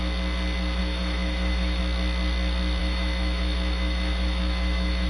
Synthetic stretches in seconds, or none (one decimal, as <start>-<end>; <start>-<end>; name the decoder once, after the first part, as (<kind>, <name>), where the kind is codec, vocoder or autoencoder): 0.8-1.8 (autoencoder, DAC-VAE); 2.8-5.1